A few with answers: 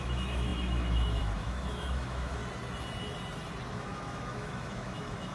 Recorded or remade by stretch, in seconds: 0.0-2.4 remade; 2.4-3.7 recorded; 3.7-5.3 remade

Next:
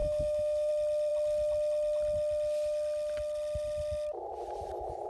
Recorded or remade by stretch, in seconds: 0.0-0.7 remade; 0.7-5.1 recorded

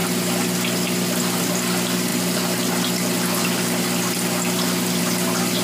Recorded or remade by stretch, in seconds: 0.0-5.6 recorded

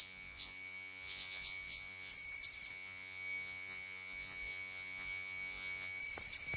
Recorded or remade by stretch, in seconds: 0.0-2.1 remade; 2.1-2.7 recorded; 2.7-6.0 remade; 6.0-6.6 recorded

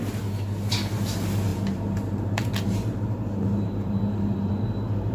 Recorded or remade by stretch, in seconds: 0.0-1.5 recorded; 1.5-4.5 remade; 4.5-5.1 recorded

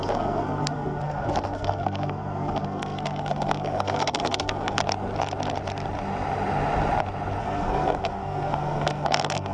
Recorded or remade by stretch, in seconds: 0.0-4.8 remade; 4.8-7.4 recorded; 7.4-9.5 remade

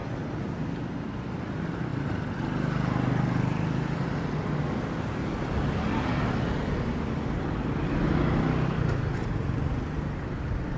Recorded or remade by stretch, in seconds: 0.0-10.8 recorded

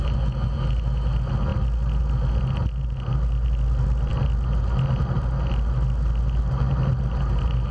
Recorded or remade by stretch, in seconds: 0.0-7.7 recorded